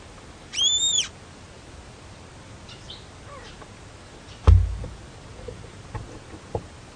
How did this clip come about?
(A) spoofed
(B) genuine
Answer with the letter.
B